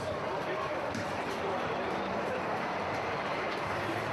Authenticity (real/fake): fake